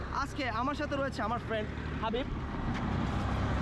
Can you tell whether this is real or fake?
real